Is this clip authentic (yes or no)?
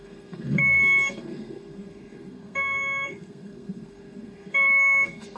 no